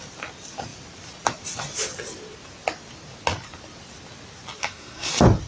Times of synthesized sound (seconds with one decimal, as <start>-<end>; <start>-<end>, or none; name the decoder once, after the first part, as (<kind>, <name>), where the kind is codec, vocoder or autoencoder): 4.6-5.1 (codec, SNAC)